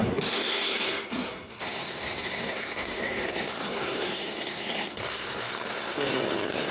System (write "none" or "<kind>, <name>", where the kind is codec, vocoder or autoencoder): codec, SNAC